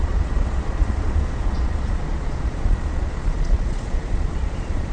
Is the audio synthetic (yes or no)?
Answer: yes